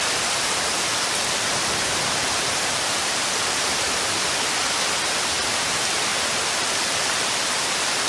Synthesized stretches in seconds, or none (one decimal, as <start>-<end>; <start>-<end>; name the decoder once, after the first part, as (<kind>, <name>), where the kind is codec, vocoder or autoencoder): 0.0-8.1 (vocoder, BigVGAN v2)

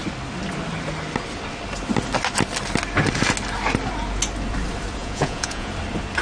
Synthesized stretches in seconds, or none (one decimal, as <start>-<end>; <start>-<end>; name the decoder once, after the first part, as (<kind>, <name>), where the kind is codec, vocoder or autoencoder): 5.0-5.7 (vocoder, Vocos)